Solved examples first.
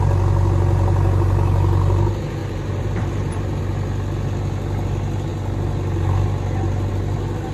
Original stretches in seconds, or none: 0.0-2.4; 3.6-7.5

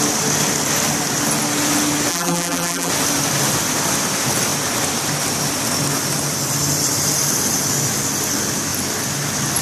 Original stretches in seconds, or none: 0.0-2.1; 2.9-9.6

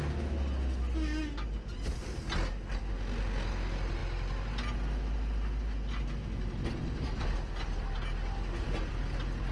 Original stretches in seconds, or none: 0.0-9.5

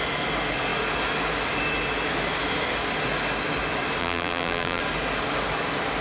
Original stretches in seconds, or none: 0.0-4.0; 4.8-6.0

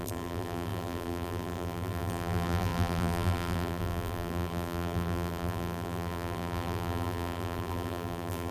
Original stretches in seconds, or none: none

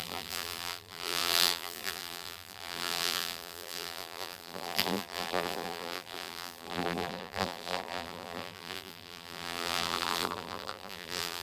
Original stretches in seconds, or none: none

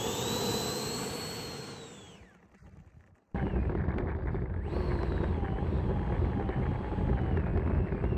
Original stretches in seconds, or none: 0.0-8.2